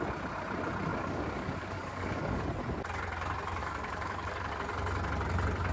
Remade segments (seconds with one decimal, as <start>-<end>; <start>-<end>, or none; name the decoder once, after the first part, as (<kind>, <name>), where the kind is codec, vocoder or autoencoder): 0.9-2.4 (codec, DAC); 3.6-4.5